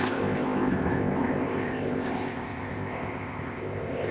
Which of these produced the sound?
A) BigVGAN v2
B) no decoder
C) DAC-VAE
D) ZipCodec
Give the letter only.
D